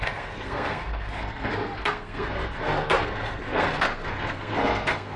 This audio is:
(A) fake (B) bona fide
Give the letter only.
A